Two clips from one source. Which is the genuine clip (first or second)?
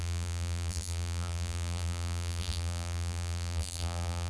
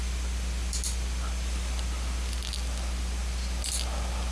second